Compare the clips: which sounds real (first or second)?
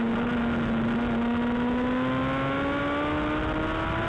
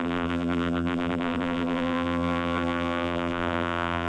first